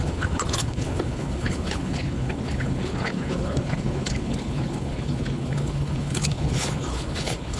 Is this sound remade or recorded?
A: remade